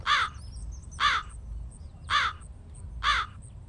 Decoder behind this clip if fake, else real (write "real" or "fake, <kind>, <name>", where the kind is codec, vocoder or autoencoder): real